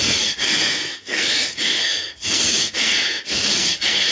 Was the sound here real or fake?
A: fake